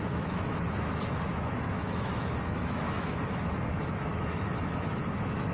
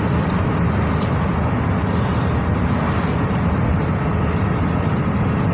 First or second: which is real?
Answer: second